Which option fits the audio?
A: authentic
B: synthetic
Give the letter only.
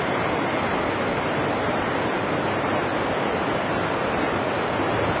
A